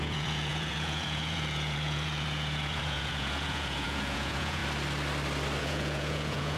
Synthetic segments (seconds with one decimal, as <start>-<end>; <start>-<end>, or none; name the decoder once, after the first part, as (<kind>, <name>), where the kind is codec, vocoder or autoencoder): 0.0-4.6 (vocoder, Vocos); 5.6-6.6